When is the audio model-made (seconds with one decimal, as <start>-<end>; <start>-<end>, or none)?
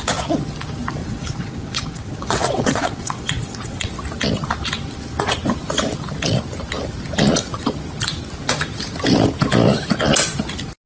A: 1.0-3.9